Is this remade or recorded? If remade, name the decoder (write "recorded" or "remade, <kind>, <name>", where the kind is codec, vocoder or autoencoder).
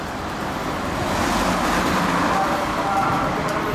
remade, vocoder, BigVGAN v2